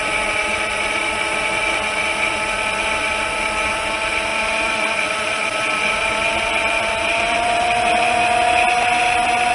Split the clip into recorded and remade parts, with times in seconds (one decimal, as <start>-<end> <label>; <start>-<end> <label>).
0.0-0.5 recorded; 0.5-1.2 remade; 1.2-4.3 recorded; 4.3-8.2 remade; 8.2-9.5 recorded